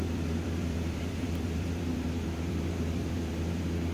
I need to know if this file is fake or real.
fake